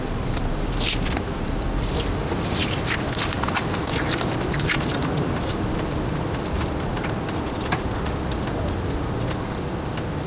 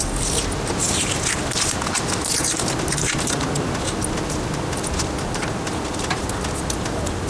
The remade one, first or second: first